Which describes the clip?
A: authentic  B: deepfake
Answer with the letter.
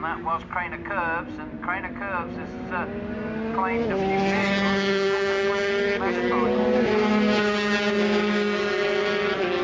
A